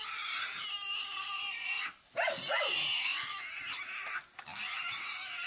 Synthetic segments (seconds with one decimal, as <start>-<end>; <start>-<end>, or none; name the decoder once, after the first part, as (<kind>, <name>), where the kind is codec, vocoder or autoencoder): none